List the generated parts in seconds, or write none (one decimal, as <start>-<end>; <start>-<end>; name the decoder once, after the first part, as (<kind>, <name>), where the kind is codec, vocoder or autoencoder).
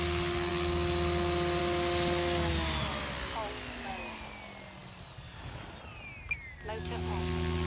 none